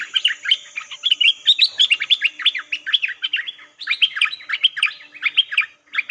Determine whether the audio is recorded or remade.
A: recorded